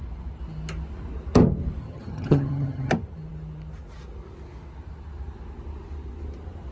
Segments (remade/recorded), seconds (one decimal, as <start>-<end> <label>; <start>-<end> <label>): 0.0-1.8 recorded; 1.8-2.9 remade; 2.9-6.7 recorded